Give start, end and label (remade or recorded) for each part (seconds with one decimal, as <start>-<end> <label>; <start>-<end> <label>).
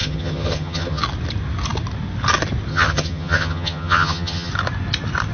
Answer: 0.0-1.0 remade; 1.0-2.7 recorded; 2.7-4.5 remade; 4.5-5.3 recorded